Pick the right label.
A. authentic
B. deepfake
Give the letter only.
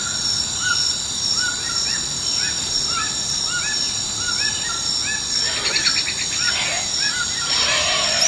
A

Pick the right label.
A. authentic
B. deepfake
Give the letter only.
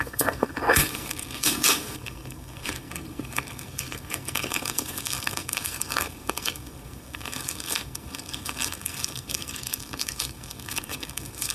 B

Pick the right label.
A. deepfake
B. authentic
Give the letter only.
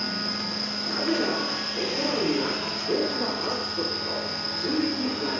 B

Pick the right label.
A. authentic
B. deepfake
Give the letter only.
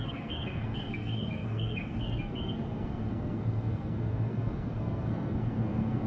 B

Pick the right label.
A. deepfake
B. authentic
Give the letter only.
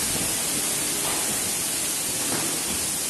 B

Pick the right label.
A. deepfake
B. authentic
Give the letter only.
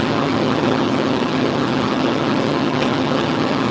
A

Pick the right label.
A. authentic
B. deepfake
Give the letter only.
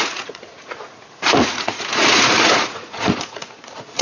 B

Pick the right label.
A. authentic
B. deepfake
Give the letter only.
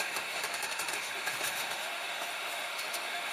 B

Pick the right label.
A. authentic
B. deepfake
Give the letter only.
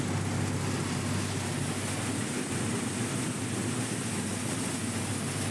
A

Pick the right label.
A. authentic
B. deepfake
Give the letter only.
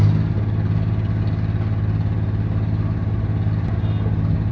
A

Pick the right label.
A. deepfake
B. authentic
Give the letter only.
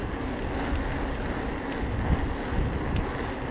B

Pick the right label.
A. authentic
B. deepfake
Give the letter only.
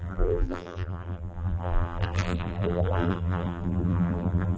B